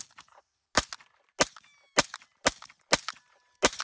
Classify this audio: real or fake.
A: real